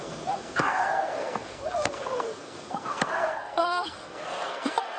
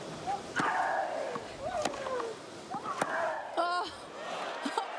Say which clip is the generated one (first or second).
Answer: first